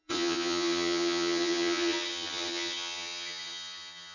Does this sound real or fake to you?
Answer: fake